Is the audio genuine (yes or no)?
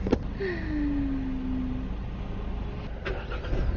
yes